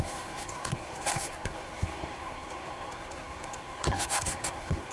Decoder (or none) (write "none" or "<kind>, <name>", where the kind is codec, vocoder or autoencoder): codec, SNAC